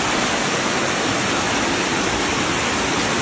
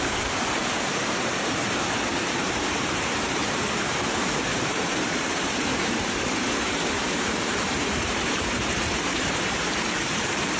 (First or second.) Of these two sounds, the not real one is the second